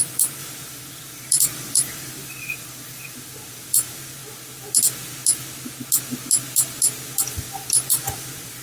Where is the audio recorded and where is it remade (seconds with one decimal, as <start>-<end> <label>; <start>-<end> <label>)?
0.0-4.2 remade; 4.2-7.2 recorded; 7.2-8.6 remade